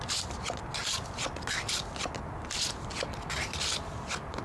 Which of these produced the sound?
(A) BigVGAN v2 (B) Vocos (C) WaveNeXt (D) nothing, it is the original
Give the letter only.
D